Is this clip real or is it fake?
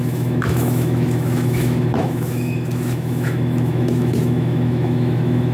fake